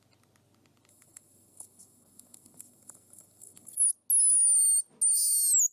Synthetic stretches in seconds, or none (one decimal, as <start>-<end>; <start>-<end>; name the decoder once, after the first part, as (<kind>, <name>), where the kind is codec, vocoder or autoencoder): 0.9-3.8 (codec, SNAC)